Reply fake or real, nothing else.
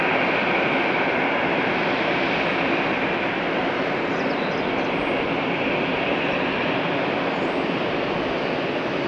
real